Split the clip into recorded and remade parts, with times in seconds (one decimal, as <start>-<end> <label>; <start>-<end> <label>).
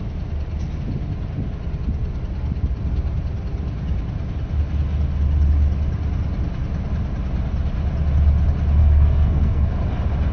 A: 0.0-8.8 recorded; 8.8-9.7 remade; 9.7-10.3 recorded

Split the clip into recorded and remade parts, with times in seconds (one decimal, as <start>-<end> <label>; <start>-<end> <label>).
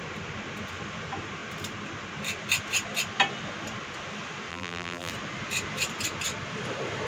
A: 0.0-4.5 recorded; 4.5-5.1 remade; 5.1-7.1 recorded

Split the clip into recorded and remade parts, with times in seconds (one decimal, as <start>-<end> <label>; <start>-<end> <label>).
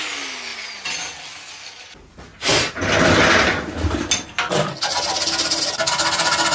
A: 0.0-6.5 recorded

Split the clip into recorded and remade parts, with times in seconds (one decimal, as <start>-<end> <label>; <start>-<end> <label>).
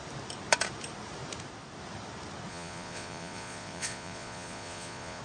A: 0.0-2.5 recorded; 2.5-5.2 remade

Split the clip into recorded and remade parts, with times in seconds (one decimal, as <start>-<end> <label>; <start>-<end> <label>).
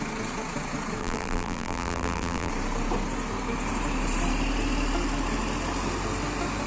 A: 0.0-1.0 recorded; 1.0-2.5 remade; 2.5-6.7 recorded